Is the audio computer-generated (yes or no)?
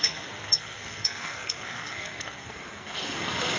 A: yes